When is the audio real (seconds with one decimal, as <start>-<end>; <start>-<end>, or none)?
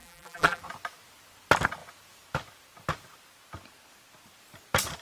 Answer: 0.6-5.0